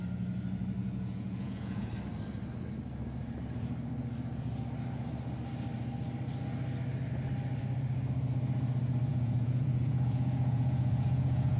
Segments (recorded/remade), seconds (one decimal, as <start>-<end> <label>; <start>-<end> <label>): 0.0-0.8 recorded; 0.8-1.9 remade; 1.9-9.1 recorded; 9.1-11.6 remade